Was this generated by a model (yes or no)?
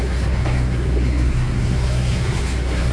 yes